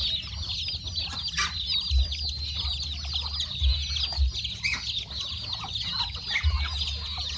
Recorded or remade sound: recorded